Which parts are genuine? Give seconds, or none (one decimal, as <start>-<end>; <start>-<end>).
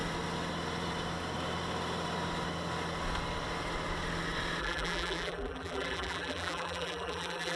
0.0-4.6